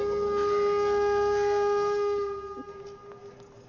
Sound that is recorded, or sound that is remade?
recorded